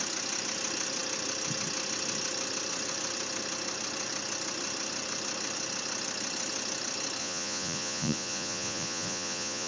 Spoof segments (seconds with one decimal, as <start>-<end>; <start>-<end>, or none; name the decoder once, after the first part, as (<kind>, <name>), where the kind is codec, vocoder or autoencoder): 7.2-9.7 (vocoder, Vocos)